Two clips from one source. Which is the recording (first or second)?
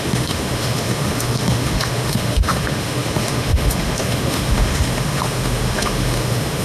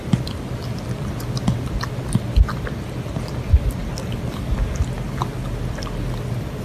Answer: second